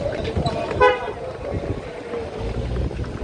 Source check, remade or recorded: recorded